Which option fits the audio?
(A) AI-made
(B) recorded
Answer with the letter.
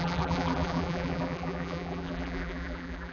A